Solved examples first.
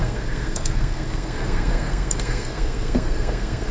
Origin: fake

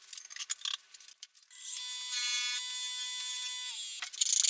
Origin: real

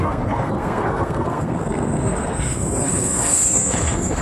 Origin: fake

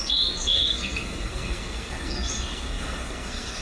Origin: fake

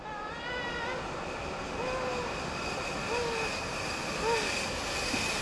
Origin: real